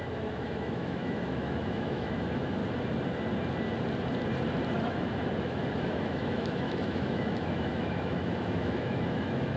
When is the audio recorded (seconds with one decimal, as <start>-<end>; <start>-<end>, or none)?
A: 2.6-4.8